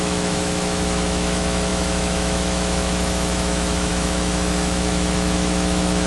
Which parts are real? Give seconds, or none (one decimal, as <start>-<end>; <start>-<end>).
none